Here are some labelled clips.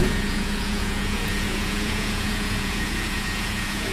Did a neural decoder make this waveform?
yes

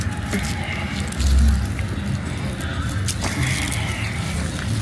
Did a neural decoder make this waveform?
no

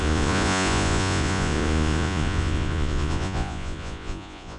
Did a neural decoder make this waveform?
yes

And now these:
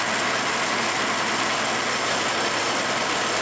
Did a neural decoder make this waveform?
no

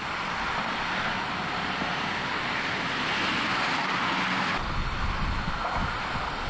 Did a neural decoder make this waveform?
no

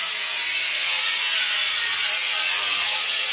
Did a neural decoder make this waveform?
yes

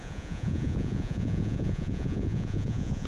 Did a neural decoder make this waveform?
yes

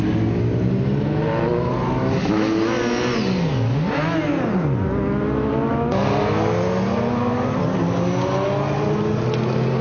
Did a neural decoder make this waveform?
no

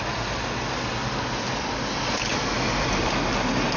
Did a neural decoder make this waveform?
no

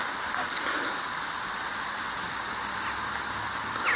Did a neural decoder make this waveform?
no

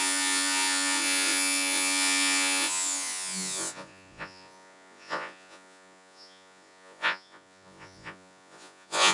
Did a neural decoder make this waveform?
yes